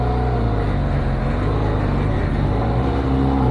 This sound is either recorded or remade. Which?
recorded